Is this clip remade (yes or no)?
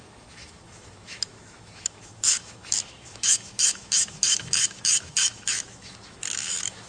yes